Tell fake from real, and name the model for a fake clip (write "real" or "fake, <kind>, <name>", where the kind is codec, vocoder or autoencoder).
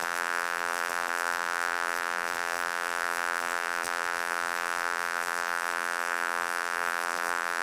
fake, vocoder, BigVGAN v2